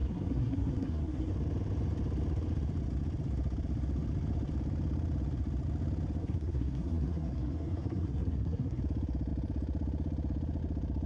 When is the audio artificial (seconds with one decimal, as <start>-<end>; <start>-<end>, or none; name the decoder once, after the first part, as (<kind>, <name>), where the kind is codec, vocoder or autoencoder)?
0.0-1.3 (codec, SNAC); 6.2-8.8